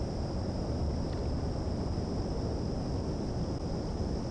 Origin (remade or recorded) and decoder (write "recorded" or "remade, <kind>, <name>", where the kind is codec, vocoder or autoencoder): recorded